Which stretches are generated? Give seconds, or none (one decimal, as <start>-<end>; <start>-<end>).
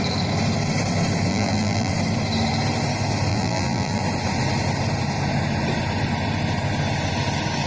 1.3-1.9; 3.3-4.0